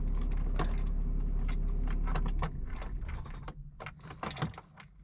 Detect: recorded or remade recorded